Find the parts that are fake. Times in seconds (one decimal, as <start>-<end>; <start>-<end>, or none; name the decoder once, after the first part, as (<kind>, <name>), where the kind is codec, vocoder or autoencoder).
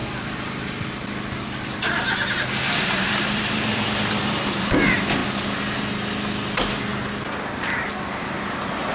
0.0-4.7 (vocoder, BigVGAN v2)